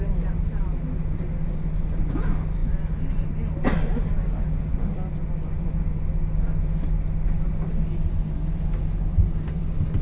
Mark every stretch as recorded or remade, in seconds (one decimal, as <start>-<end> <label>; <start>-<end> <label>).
0.0-10.0 recorded